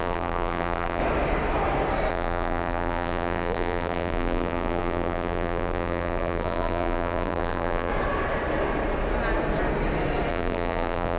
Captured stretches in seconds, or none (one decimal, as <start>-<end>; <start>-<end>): 1.0-2.1; 7.9-10.3